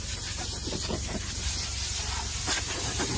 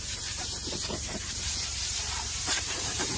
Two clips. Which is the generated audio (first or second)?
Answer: second